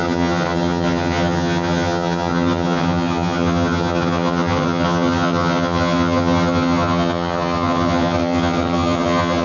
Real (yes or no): no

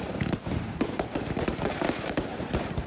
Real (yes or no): no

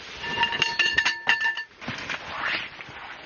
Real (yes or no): yes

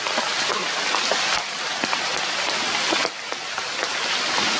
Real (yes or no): yes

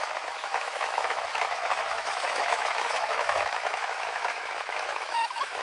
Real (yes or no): no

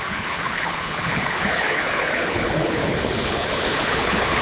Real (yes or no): no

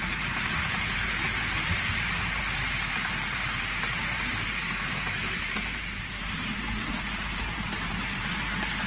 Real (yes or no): no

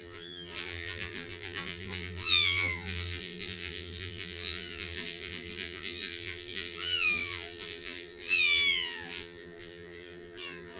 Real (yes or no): no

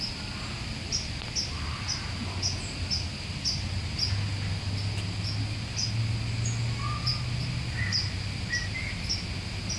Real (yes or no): yes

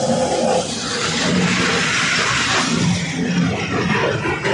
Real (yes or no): yes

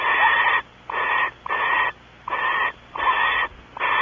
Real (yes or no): yes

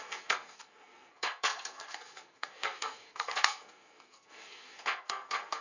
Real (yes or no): no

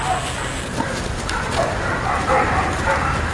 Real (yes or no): yes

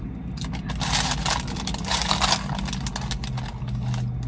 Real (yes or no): yes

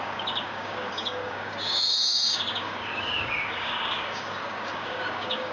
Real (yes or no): no